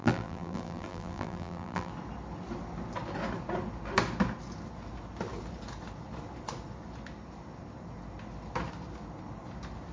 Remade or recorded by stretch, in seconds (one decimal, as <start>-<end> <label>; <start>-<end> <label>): 0.0-1.9 remade; 1.9-9.9 recorded